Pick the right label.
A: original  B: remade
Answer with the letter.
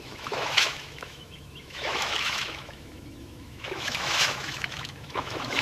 B